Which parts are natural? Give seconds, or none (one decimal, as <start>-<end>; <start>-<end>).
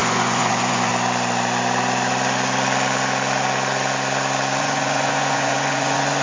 0.9-4.6